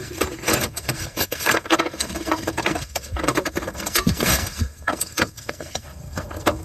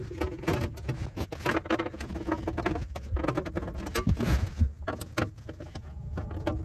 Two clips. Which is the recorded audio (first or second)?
second